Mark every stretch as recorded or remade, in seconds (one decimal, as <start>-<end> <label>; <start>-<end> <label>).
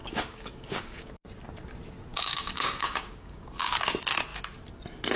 0.0-1.1 remade; 1.1-2.1 recorded; 2.1-3.7 remade; 3.7-5.2 recorded